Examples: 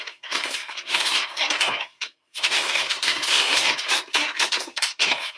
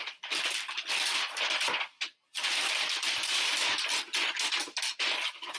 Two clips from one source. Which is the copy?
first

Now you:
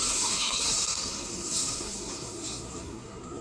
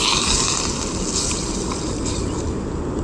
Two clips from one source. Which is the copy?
first